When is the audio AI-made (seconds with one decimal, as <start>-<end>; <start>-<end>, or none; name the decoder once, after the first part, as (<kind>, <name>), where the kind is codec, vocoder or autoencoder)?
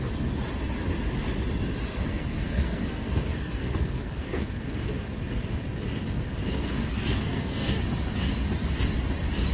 1.9-4.9 (codec, SNAC); 6.4-7.8